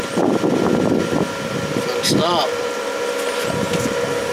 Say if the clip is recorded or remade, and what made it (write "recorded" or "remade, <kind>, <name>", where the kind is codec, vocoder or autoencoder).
recorded